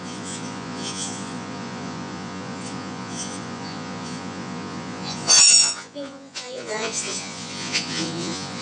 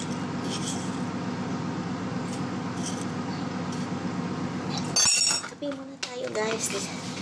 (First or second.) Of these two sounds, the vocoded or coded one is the first